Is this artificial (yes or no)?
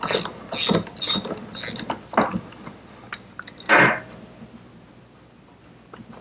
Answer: no